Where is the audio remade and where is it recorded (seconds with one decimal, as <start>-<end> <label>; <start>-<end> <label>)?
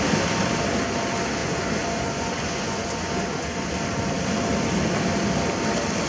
0.0-1.4 recorded; 1.4-3.7 remade; 3.7-6.1 recorded